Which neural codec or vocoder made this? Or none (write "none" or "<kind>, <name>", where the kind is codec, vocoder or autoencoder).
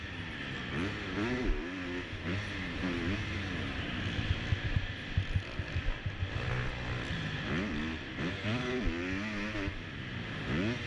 none